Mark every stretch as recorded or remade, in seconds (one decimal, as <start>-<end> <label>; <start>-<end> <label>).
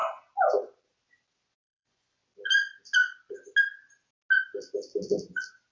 0.0-1.5 recorded; 1.5-2.2 remade; 2.2-5.7 recorded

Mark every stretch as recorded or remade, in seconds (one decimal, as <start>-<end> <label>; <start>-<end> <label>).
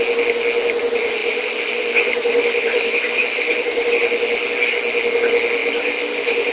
0.0-1.2 recorded; 1.2-3.9 remade; 3.9-5.6 recorded; 5.6-6.5 remade